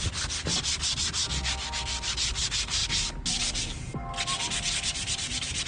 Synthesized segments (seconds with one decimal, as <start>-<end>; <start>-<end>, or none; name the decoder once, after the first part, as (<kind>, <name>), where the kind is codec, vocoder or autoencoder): none